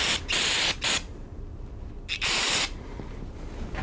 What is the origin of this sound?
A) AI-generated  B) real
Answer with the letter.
B